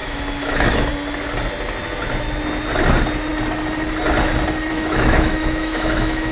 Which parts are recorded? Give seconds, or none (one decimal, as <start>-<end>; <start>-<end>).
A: 0.9-4.7